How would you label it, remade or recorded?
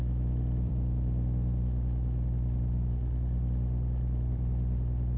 remade